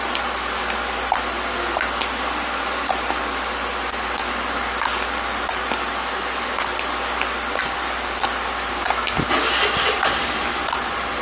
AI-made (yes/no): no